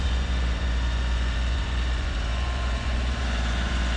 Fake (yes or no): yes